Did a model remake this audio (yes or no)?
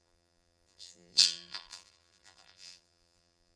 yes